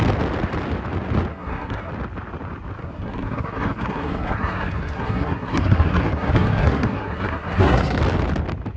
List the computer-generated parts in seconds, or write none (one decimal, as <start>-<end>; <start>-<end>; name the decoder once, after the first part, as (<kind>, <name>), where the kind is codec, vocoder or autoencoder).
1.3-1.9 (codec, SNAC); 2.8-8.0